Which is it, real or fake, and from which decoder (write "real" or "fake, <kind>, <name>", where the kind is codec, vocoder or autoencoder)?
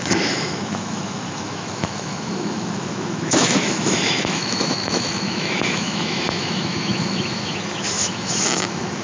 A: fake, autoencoder, DAC-VAE